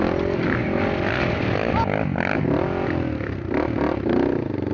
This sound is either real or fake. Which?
real